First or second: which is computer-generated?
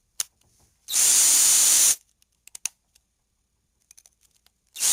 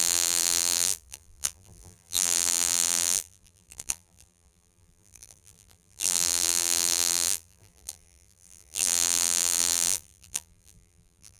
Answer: second